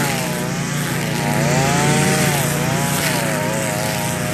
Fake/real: real